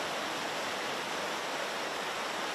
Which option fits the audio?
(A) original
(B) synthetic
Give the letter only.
A